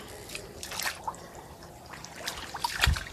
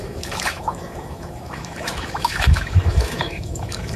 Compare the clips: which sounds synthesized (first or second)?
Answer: second